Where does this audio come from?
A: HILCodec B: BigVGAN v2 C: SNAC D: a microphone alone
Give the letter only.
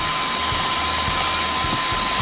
D